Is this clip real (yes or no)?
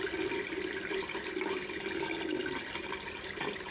yes